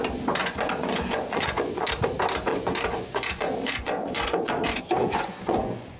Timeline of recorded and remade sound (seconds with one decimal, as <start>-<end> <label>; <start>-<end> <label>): 0.0-0.4 recorded; 0.4-1.9 remade; 1.9-2.5 recorded; 2.5-6.0 remade